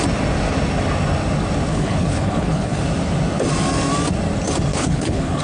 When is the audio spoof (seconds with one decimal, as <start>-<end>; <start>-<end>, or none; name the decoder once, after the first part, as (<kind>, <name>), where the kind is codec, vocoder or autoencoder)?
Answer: 1.7-2.8 (codec, HILCodec); 4.7-5.4